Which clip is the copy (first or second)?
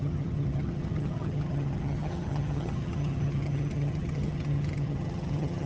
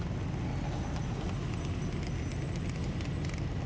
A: first